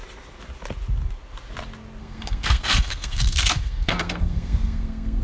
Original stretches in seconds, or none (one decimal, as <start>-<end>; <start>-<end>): 0.0-2.0